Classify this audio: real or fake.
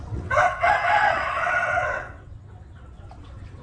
fake